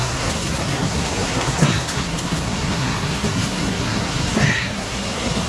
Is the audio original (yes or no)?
no